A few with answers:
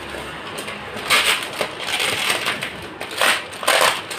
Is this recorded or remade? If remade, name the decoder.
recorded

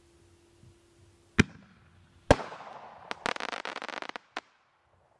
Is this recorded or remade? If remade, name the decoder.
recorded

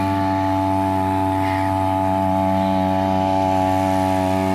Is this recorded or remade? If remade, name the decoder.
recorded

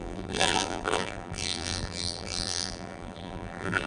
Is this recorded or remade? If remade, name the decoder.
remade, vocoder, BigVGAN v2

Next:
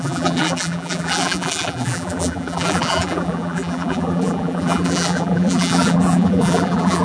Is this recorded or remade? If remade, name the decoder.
remade, vocoder, BigVGAN v2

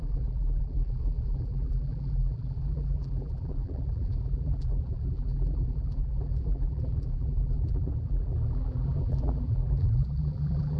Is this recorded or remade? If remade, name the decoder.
remade, vocoder, BigVGAN v2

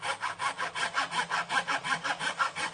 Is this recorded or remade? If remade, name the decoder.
recorded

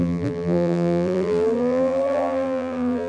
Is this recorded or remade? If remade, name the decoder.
remade, vocoder, BigVGAN v2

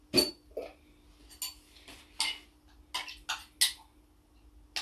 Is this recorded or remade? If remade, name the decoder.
recorded